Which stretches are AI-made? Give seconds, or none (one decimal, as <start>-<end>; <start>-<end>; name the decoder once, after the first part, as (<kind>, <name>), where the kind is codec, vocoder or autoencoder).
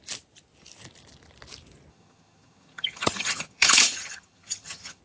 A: 1.9-5.0 (vocoder, HiFi-GAN)